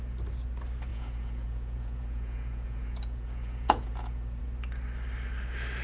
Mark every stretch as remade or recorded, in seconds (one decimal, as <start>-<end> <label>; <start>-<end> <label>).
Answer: 0.0-0.9 recorded; 0.9-4.4 remade; 4.4-5.8 recorded